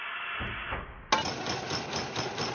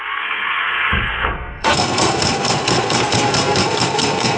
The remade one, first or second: second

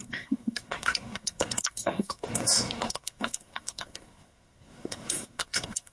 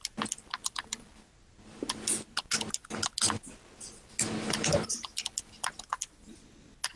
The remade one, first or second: first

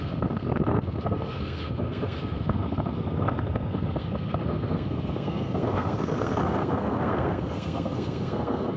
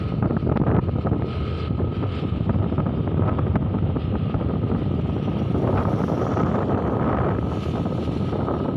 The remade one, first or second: first